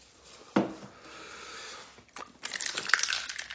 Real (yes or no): yes